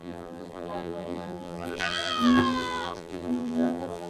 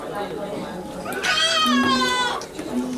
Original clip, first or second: second